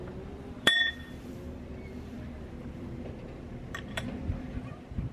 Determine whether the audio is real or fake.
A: fake